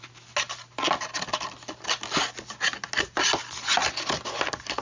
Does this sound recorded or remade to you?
recorded